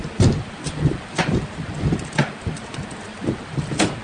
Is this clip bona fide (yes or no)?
yes